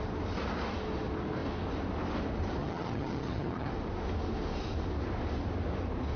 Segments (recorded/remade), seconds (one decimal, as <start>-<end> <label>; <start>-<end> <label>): 0.0-2.6 recorded; 2.6-3.7 remade; 3.7-6.2 recorded